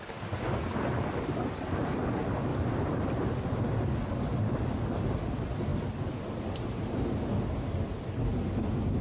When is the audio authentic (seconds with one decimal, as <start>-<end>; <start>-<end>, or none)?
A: 0.0-2.5; 3.2-5.7; 7.3-9.0